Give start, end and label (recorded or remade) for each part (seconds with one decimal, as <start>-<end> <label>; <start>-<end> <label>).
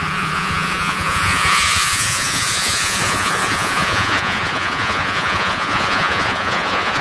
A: 0.0-7.0 remade